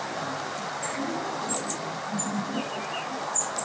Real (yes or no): yes